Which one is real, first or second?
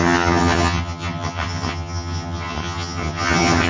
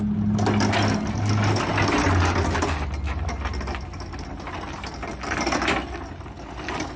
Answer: second